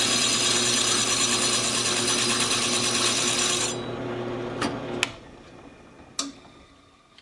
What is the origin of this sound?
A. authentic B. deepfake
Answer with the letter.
A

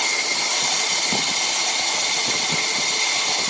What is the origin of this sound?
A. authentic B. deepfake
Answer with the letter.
A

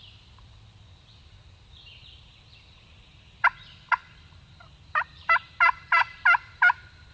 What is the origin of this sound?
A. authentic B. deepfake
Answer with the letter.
B